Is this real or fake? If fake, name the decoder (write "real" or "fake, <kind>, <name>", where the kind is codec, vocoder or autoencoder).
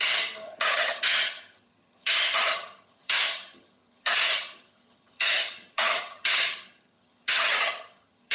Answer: fake, vocoder, HiFi-GAN